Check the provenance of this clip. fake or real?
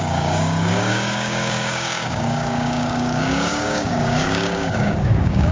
fake